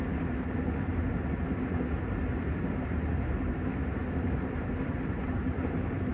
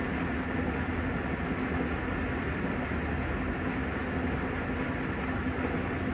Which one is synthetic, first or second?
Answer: first